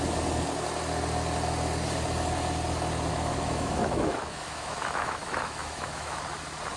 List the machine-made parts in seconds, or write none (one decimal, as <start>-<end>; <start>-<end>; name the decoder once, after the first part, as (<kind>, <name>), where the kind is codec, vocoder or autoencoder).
3.1-6.2 (autoencoder, DAC-VAE)